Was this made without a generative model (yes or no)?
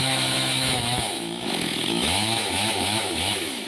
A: no